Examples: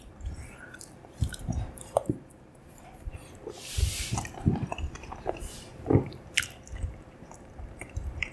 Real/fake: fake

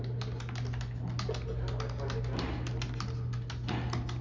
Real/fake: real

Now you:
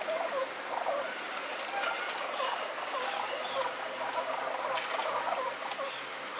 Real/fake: real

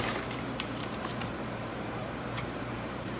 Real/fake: fake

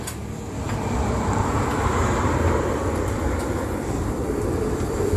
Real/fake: fake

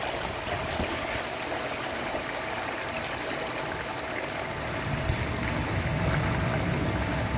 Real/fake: real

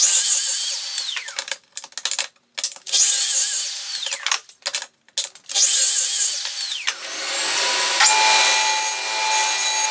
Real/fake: real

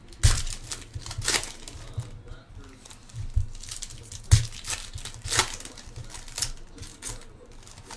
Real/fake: real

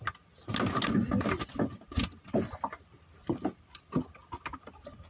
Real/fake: real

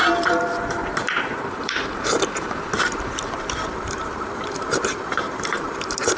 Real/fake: fake